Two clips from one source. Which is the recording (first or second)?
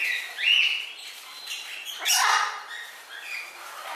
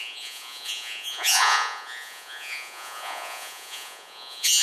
first